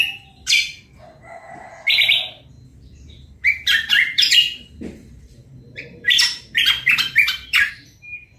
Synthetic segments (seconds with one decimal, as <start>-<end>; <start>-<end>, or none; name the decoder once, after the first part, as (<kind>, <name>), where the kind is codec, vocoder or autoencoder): 2.7-7.7 (vocoder, BigVGAN v2)